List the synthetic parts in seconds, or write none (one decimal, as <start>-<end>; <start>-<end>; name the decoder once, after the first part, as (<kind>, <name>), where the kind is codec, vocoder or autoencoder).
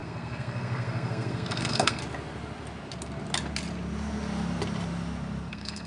0.0-2.0 (codec, SNAC); 5.5-5.9